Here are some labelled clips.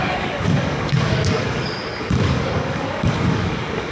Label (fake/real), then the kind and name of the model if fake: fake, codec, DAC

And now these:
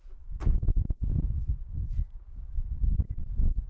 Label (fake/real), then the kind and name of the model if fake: real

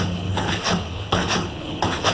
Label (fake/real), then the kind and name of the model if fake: fake, codec, HILCodec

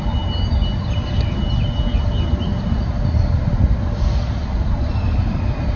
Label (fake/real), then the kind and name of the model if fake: real